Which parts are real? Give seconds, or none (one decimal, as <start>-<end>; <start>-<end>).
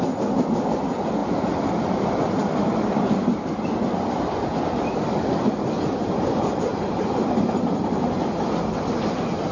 0.0-9.5